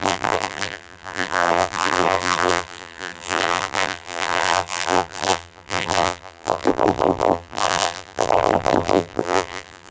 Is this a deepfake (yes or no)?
yes